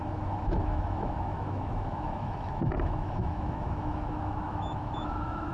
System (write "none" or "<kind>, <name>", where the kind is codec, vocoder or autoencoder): autoencoder, DAC-VAE